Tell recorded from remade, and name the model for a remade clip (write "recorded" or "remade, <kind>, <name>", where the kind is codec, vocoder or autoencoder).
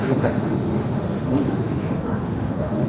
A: remade, autoencoder, DAC-VAE